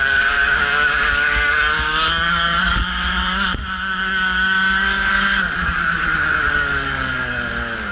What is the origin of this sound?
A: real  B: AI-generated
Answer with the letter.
B